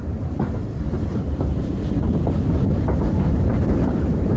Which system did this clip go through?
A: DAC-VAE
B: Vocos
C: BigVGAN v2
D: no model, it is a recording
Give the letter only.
C